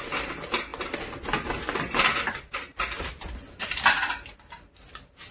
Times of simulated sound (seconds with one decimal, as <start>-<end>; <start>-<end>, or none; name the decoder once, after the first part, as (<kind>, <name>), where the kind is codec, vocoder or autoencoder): none